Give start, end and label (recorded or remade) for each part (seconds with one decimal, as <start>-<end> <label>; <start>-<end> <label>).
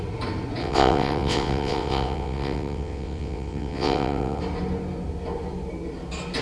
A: 0.0-0.6 recorded; 0.6-4.4 remade; 4.4-6.4 recorded